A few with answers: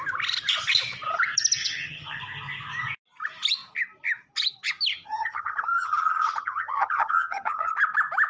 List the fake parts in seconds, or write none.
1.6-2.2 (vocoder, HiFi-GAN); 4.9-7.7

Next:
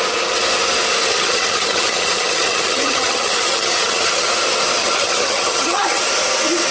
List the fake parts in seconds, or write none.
1.1-4.3 (vocoder, HiFi-GAN); 4.8-6.0